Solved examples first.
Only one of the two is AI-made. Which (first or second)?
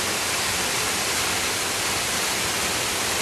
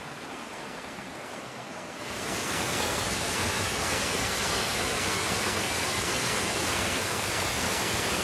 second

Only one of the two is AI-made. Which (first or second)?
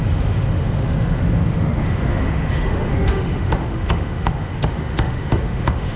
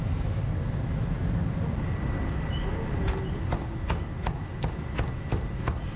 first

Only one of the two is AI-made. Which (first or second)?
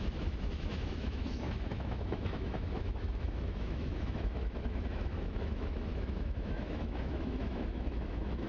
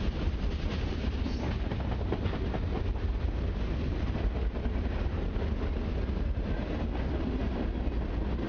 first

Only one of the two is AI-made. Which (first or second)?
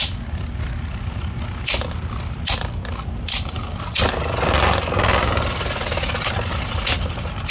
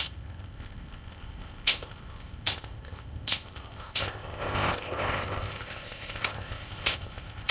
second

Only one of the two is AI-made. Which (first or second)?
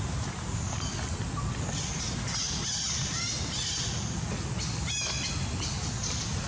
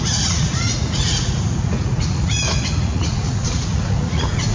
second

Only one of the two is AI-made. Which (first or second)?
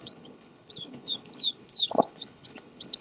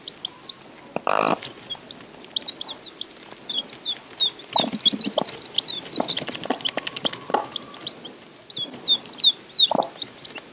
first